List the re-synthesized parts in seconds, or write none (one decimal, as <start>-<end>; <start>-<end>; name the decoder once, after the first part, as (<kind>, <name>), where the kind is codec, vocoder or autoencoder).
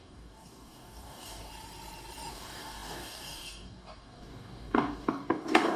0.0-1.5 (codec, DAC); 2.3-5.8